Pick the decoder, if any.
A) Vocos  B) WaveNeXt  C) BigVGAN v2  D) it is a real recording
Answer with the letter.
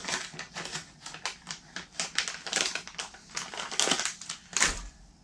D